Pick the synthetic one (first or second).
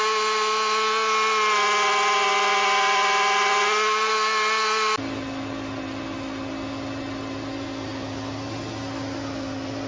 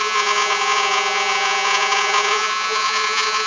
second